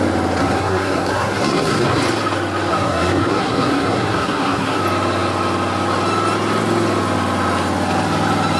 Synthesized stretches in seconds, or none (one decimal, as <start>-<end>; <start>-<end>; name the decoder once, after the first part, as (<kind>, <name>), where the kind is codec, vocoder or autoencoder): 0.4-2.0 (codec, SNAC); 2.7-4.8

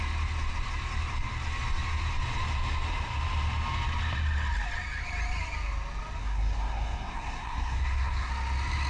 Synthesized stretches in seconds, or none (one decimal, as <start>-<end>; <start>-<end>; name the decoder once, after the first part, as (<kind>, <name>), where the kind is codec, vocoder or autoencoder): 6.2-8.3 (codec, SNAC)

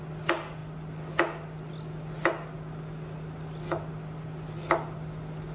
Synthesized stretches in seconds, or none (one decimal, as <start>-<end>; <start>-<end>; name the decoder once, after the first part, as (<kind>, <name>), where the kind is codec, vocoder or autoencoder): none

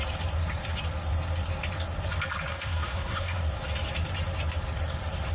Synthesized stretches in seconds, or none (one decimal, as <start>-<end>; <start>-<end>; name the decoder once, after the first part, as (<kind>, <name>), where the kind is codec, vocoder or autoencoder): 2.5-3.4 (codec, SNAC)

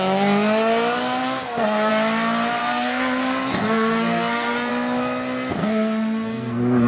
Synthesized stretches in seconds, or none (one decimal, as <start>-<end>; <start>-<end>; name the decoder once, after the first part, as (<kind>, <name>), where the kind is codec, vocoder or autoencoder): 1.2-1.9 (codec, SNAC); 2.6-4.7; 5.6-6.9

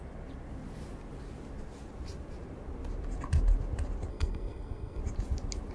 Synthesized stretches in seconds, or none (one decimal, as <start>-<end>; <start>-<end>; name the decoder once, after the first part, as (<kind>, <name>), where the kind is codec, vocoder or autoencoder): 4.1-5.0 (codec, SNAC)

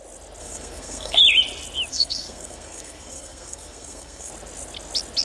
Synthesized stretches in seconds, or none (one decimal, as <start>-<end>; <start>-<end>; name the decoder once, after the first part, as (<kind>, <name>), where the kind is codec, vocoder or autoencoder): 0.4-1.2 (codec, SNAC); 1.9-4.3